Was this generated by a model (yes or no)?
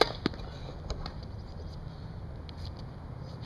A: no